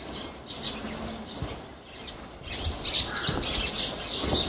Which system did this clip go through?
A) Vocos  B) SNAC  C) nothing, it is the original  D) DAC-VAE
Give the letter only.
C